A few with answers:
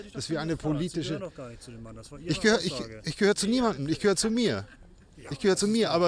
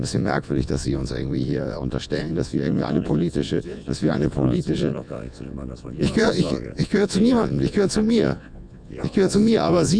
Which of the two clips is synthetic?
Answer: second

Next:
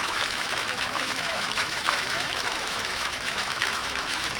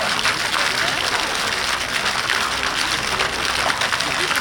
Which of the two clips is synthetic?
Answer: first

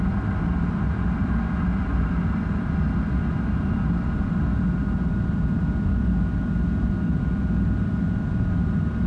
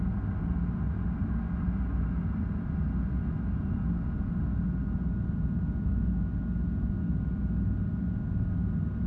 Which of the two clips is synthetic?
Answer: first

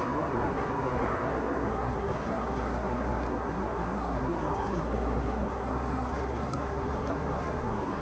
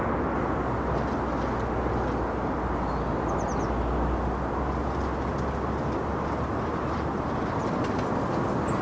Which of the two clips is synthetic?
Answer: first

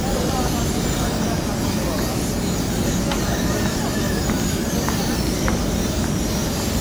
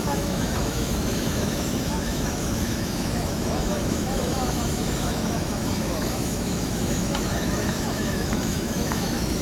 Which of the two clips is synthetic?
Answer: second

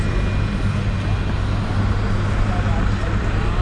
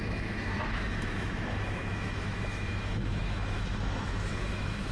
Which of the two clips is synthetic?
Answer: second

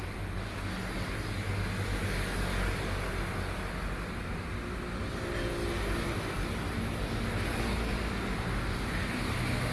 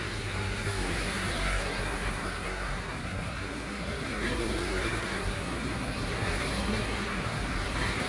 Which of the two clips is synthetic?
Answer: second